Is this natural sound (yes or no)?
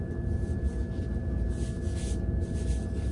yes